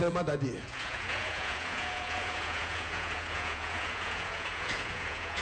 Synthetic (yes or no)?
yes